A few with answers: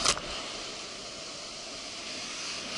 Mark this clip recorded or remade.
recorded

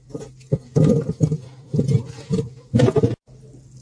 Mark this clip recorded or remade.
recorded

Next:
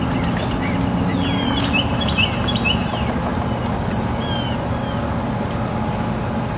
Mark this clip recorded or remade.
recorded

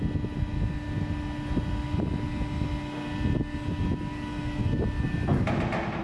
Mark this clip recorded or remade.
recorded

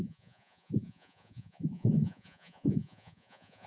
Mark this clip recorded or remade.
remade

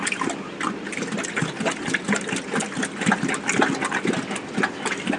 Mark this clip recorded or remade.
recorded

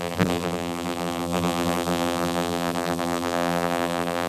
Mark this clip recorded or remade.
remade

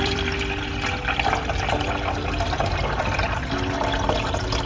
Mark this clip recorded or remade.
remade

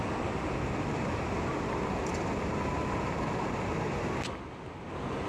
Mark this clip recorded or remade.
recorded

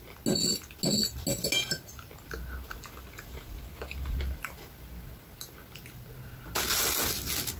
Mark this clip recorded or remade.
recorded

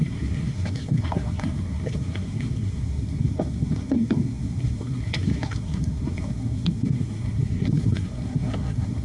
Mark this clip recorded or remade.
remade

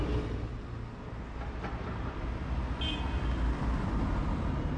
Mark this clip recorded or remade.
recorded